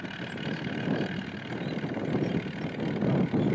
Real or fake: real